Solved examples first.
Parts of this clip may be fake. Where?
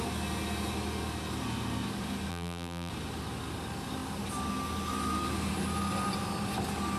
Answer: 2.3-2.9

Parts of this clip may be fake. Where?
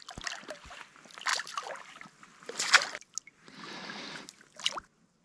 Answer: none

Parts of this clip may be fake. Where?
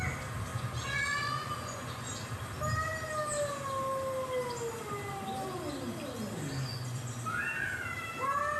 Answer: 0.5-2.1; 6.7-7.2